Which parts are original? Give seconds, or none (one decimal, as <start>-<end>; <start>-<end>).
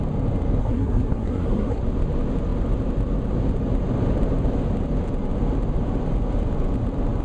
0.0-0.6; 1.8-7.2